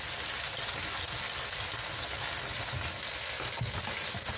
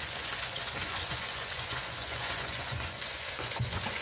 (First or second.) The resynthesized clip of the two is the second